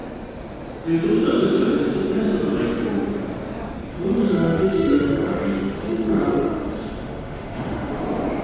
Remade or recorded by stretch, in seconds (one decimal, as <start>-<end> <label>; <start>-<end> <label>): 0.0-3.9 recorded; 3.9-8.0 remade; 8.0-8.4 recorded